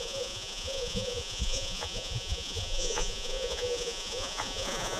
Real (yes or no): no